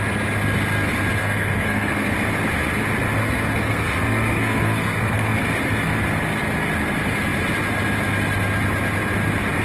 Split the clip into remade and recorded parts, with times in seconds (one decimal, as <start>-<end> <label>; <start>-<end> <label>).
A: 0.0-1.2 recorded; 1.2-2.1 remade; 2.1-3.2 recorded; 3.2-5.3 remade; 5.3-9.6 recorded